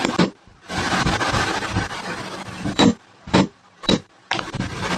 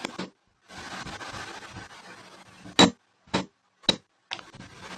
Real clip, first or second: second